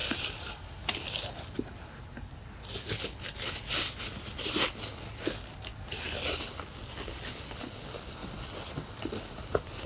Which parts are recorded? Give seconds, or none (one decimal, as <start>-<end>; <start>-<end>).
0.0-9.9